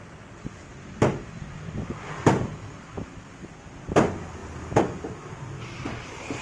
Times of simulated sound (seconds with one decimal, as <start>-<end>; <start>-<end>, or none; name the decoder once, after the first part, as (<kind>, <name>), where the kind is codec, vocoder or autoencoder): none